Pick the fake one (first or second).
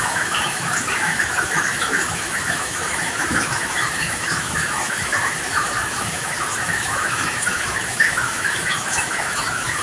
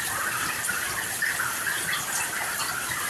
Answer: first